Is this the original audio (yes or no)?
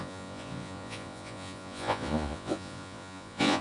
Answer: no